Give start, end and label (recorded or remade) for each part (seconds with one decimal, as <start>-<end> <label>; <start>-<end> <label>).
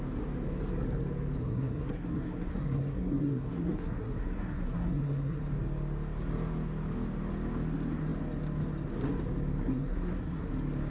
0.0-1.4 recorded; 1.4-5.4 remade; 5.4-9.6 recorded; 9.6-10.5 remade; 10.5-10.9 recorded